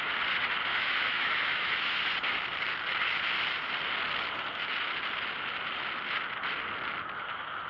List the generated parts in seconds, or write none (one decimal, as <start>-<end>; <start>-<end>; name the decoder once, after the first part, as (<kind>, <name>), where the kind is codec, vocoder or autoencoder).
0.7-1.7 (autoencoder, DAC-VAE)